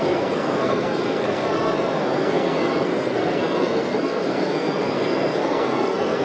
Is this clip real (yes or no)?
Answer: no